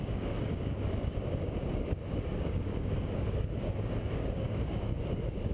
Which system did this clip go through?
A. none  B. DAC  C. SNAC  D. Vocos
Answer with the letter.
B